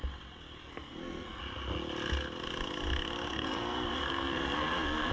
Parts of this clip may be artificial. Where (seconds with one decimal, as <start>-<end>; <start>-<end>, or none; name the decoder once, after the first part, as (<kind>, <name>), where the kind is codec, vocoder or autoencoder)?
0.6-1.4 (codec, SNAC); 3.3-5.1